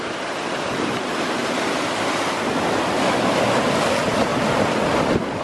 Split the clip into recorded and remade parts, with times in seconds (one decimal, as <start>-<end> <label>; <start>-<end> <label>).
0.0-5.4 recorded